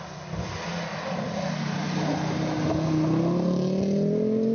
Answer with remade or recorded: recorded